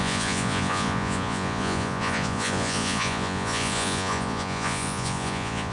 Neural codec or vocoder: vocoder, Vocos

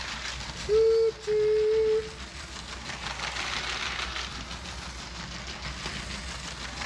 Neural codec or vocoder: none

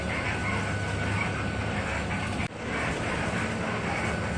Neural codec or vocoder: none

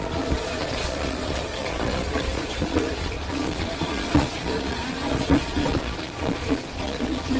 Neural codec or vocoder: vocoder, Vocos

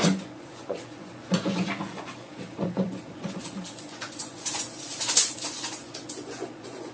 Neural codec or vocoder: vocoder, Vocos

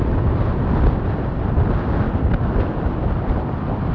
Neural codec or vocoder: none